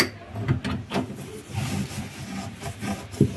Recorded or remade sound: recorded